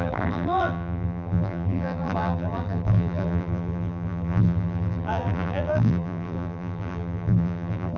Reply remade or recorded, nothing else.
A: remade